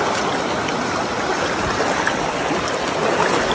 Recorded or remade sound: recorded